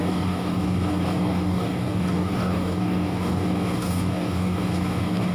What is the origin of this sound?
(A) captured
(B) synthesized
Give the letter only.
B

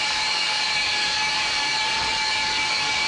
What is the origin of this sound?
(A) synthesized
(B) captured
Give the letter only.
A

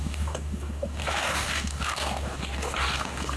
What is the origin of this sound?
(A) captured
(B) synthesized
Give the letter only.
B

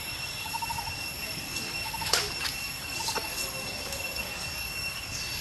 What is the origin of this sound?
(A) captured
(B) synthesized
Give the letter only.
B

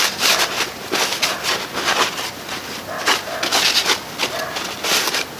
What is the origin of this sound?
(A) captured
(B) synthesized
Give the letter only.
A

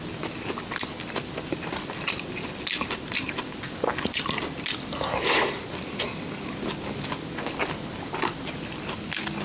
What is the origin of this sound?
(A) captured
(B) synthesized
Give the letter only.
A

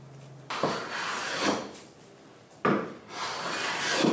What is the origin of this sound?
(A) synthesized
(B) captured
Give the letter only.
B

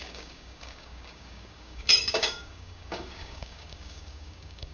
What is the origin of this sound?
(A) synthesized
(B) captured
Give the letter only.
A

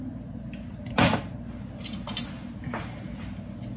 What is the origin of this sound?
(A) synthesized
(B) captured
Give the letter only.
B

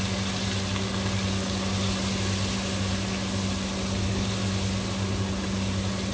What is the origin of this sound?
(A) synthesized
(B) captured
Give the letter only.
B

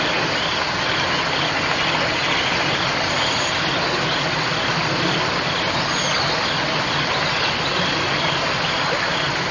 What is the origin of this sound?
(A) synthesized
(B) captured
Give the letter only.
B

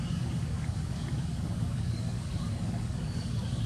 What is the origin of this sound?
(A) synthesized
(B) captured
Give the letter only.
A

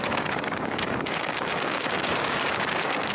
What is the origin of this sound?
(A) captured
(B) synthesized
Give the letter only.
B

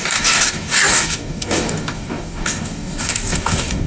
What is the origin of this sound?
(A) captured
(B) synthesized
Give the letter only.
B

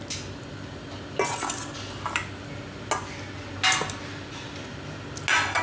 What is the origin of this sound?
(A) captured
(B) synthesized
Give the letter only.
A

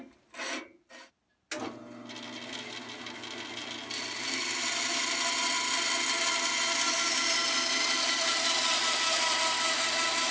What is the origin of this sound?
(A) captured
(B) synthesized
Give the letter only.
A